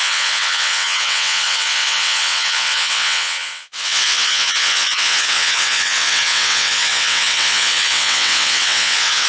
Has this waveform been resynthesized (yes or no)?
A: yes